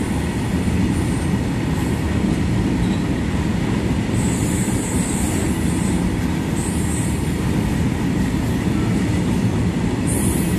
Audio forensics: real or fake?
real